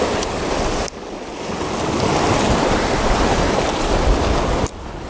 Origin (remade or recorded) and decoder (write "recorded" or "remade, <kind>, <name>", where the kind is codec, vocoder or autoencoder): remade, vocoder, BigVGAN v2